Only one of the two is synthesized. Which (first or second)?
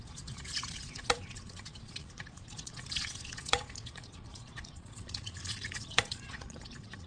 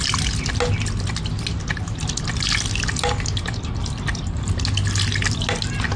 first